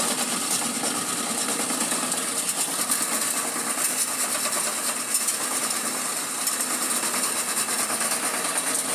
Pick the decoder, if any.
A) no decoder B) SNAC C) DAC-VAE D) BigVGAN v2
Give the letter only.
A